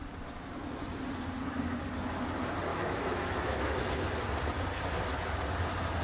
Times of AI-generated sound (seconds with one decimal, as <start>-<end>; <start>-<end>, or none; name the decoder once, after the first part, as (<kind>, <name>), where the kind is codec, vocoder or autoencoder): 2.7-3.8 (autoencoder, DAC-VAE)

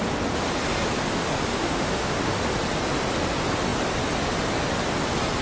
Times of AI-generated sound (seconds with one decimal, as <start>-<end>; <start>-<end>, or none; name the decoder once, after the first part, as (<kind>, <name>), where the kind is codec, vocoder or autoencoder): 1.5-2.4 (autoencoder, DAC-VAE)

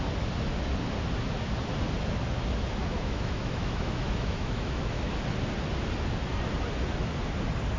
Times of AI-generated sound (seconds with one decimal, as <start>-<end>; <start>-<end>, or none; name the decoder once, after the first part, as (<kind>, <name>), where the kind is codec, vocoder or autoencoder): 2.8-5.1 (autoencoder, DAC-VAE)